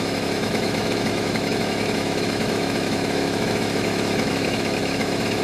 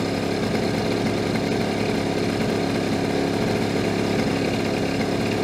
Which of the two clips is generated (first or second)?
first